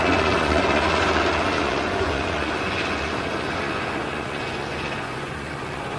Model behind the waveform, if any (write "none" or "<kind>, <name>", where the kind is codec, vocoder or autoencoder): vocoder, Vocos